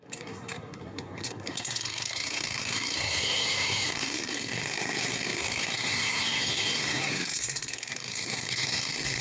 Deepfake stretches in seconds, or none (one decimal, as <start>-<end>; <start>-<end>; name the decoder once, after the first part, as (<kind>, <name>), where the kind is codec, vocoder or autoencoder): 0.0-9.2 (codec, SNAC)